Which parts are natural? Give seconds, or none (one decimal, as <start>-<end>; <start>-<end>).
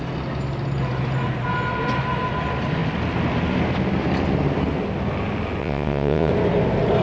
0.0-5.6; 6.3-7.0